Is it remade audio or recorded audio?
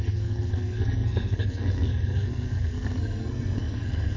remade